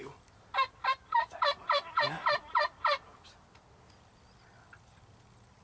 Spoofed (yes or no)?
no